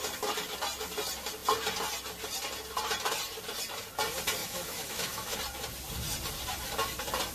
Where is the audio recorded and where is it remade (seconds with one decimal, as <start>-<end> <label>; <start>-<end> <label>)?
0.0-4.4 recorded; 4.4-5.4 remade; 5.4-7.3 recorded